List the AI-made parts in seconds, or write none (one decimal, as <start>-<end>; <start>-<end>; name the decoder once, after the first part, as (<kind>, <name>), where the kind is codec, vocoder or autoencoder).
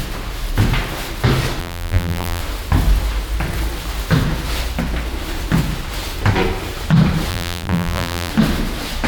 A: 1.6-2.4 (vocoder, BigVGAN v2); 7.3-8.3